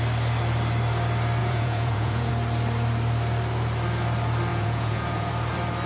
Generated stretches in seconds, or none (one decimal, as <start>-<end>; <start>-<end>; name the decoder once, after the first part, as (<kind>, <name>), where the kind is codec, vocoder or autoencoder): 1.4-2.3 (vocoder, Vocos); 4.5-5.3